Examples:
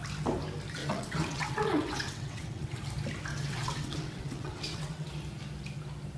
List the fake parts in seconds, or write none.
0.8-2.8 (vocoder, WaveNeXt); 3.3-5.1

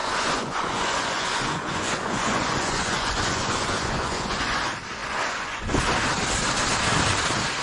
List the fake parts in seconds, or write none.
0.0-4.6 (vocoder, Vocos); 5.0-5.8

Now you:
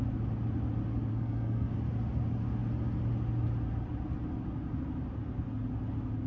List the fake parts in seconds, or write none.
1.1-1.7 (codec, SNAC)